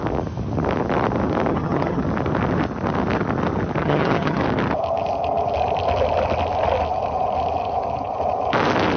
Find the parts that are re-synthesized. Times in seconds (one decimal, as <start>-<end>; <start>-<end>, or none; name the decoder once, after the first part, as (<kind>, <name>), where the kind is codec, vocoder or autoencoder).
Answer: 1.5-2.0 (vocoder, HiFi-GAN); 3.8-4.4

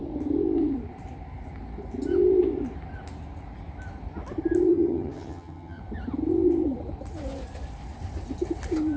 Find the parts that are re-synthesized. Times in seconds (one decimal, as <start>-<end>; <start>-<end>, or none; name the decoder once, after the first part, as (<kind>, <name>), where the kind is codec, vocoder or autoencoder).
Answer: 4.7-5.8 (vocoder, HiFi-GAN)

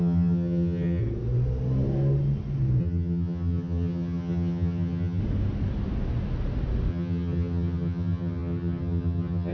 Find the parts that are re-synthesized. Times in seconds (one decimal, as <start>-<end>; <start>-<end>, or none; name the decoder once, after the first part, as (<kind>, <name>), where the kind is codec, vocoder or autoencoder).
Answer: 0.0-1.0 (vocoder, HiFi-GAN); 2.8-5.2; 6.9-9.5

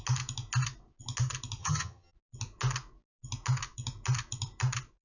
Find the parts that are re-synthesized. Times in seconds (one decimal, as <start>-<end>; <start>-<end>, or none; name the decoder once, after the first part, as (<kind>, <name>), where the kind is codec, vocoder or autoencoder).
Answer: 1.6-2.1 (vocoder, HiFi-GAN)

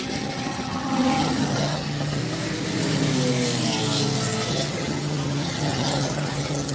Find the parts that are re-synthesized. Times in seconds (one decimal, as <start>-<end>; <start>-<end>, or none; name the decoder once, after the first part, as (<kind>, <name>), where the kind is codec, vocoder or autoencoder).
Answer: 0.0-2.2 (vocoder, HiFi-GAN); 4.5-6.7

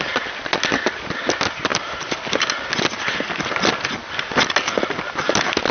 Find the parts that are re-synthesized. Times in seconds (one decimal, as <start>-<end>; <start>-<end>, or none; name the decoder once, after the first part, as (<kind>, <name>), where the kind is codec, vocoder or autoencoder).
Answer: none

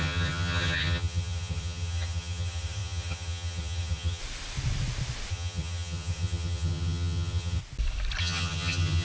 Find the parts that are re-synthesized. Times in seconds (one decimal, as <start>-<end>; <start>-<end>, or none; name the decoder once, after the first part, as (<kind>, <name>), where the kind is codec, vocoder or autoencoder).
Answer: 0.0-4.2 (vocoder, HiFi-GAN); 5.3-7.6; 8.2-9.0